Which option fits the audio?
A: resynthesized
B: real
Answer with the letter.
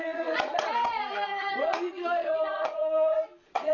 A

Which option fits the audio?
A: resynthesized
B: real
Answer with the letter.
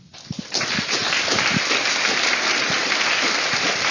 B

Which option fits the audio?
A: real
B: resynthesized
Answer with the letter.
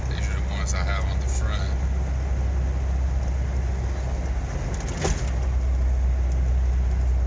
A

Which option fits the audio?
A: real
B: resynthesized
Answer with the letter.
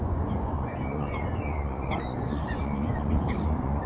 B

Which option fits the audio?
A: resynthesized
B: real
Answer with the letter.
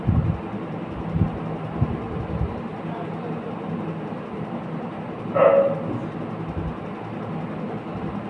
B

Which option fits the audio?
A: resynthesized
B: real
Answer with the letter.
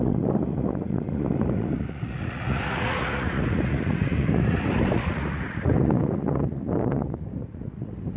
A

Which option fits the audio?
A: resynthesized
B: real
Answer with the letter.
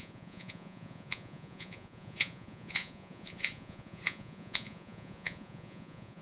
A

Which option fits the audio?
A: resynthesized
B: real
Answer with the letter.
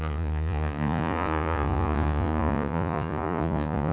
A